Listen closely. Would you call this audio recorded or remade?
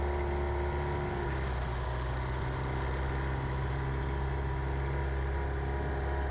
recorded